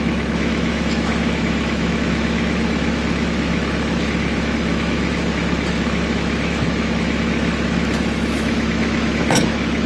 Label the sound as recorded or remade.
remade